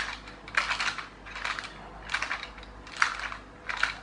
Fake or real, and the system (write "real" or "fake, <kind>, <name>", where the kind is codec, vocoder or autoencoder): real